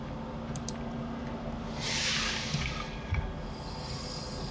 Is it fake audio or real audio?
real